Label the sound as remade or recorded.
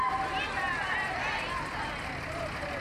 recorded